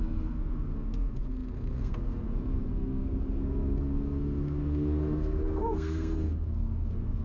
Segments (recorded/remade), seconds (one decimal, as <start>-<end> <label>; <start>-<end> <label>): 0.0-7.2 remade